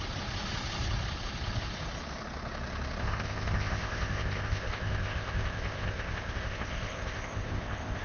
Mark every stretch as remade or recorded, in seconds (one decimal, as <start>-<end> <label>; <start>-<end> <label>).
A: 0.0-3.0 recorded; 3.0-8.0 remade